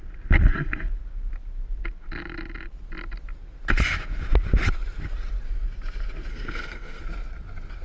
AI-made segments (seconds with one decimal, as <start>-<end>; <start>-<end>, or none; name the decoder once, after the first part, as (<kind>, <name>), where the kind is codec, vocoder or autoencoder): 6.3-7.0 (codec, SNAC)